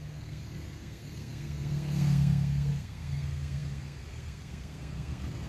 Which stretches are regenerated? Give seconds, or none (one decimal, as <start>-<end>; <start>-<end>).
0.0-5.5

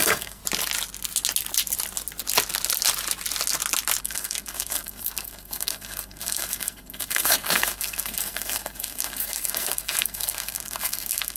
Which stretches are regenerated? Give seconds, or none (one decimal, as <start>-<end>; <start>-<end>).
0.0-0.4; 4.0-11.4

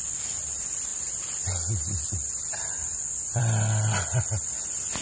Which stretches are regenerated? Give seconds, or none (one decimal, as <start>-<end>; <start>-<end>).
none

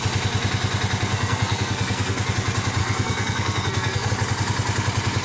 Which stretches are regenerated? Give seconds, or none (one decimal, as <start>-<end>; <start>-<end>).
1.1-2.3; 2.8-4.1

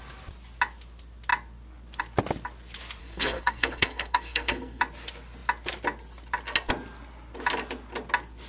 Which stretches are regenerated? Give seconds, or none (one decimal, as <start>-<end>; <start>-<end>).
3.0-4.8

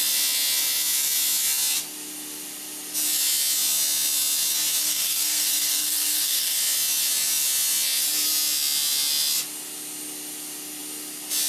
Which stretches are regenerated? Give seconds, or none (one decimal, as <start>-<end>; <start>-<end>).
4.8-6.6

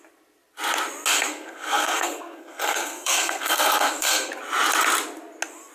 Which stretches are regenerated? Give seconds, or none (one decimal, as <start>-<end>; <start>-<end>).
1.3-4.3

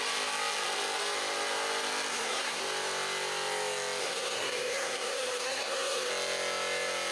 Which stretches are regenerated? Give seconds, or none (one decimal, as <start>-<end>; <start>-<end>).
2.1-2.6; 4.0-6.1